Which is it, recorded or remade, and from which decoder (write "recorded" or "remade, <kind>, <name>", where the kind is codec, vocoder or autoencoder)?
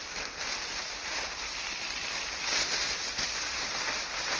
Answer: remade, vocoder, BigVGAN v2